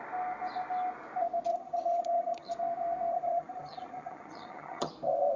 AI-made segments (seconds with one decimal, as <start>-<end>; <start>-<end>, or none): 1.5-2.5; 3.1-4.9